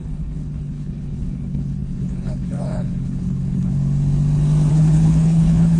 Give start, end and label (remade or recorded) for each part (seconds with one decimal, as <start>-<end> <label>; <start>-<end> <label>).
0.0-3.7 remade; 3.7-4.7 recorded; 4.7-5.8 remade